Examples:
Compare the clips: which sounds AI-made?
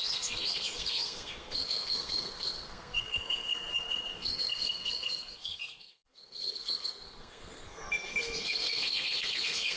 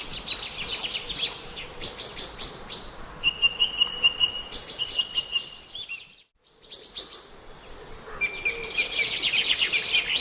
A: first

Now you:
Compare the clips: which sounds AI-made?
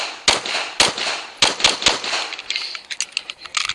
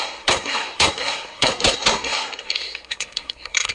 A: second